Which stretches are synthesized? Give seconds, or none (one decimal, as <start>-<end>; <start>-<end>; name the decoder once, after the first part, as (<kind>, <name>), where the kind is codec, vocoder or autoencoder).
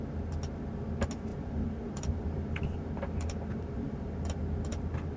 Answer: 1.3-4.4 (vocoder, BigVGAN v2)